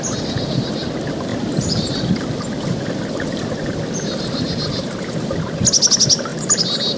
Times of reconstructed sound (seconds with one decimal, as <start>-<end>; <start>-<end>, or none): 1.3-2.0